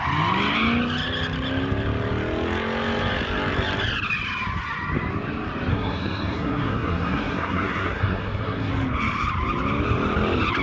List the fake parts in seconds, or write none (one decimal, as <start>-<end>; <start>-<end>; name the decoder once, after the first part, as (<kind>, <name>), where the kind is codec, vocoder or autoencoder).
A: 5.7-8.7 (codec, SNAC)